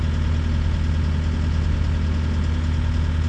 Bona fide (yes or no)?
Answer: yes